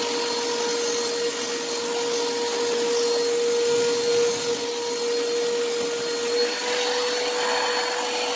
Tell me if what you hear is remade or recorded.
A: recorded